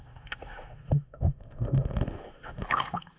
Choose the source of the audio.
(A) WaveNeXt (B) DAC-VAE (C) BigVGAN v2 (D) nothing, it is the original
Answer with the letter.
B